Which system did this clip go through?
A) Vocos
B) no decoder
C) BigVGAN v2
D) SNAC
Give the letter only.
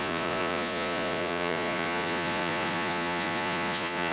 A